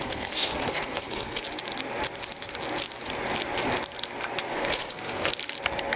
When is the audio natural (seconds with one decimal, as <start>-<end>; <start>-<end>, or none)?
1.4-4.4; 5.3-6.0